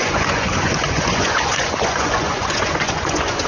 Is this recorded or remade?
remade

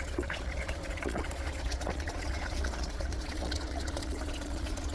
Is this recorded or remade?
remade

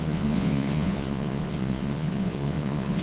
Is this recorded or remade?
remade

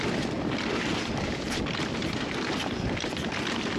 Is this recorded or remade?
recorded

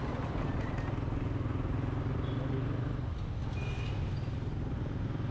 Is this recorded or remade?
recorded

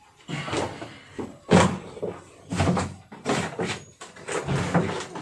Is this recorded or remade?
recorded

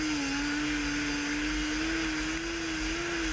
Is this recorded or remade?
recorded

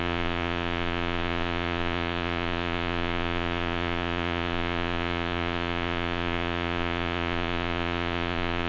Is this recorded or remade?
remade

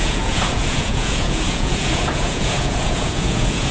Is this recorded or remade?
remade